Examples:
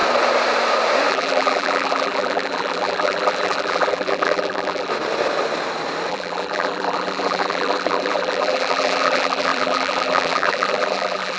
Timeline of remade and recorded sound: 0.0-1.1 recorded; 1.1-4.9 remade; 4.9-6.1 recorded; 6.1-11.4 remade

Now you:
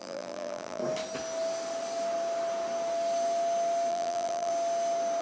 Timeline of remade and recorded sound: 0.0-0.8 remade; 0.8-3.9 recorded; 3.9-4.5 remade; 4.5-5.2 recorded

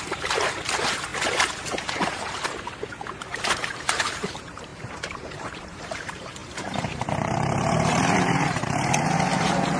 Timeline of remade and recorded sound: 0.0-1.1 remade; 1.1-3.4 recorded; 3.4-9.8 remade

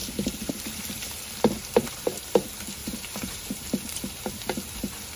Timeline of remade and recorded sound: 0.0-2.8 recorded; 2.8-3.5 remade; 3.5-5.2 recorded

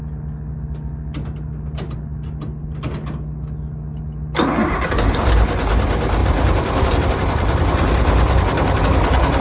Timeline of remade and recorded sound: 0.0-4.6 recorded; 4.6-5.7 remade; 5.7-6.2 recorded; 6.2-8.8 remade; 8.8-9.4 recorded

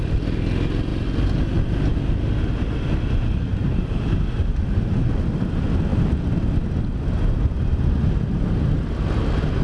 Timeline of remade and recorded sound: 0.0-3.6 recorded; 3.6-4.6 remade; 4.6-5.9 recorded; 5.9-6.5 remade; 6.5-9.6 recorded